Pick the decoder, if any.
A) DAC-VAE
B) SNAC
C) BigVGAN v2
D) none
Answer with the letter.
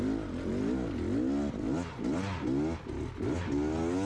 D